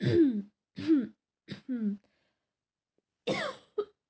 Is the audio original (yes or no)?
yes